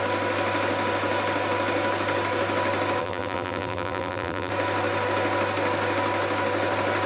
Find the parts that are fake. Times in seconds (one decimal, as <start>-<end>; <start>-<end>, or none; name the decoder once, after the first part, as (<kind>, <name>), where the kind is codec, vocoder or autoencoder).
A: 3.0-4.5 (vocoder, BigVGAN v2)